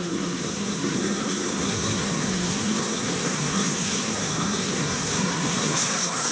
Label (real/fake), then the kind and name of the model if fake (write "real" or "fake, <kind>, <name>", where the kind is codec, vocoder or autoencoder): fake, codec, SNAC